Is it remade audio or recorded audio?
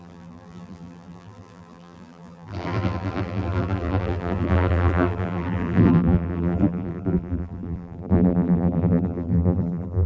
remade